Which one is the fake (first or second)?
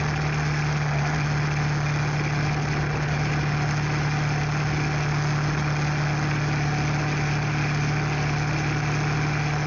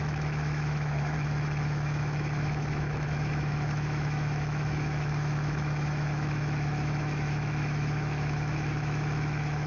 second